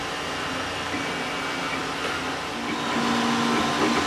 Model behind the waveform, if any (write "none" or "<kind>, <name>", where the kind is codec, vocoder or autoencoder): none